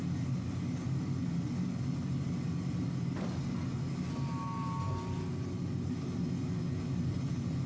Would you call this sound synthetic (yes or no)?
no